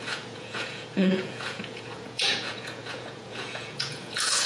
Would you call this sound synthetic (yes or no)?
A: yes